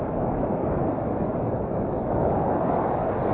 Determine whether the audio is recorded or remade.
remade